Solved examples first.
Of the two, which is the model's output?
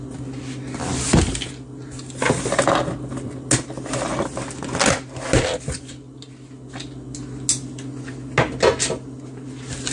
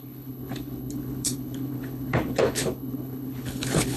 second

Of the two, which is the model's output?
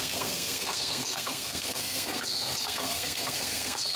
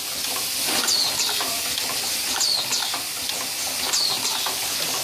first